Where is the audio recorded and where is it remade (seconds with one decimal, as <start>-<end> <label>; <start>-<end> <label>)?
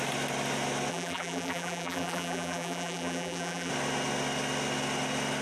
0.0-0.9 recorded; 0.9-3.7 remade; 3.7-5.4 recorded